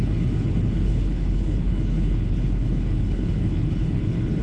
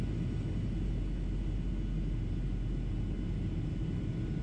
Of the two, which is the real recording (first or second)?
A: second